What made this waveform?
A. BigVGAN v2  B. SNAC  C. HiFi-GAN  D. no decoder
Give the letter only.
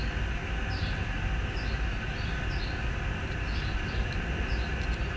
D